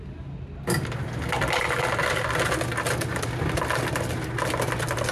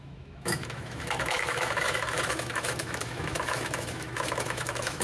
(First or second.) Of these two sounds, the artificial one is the second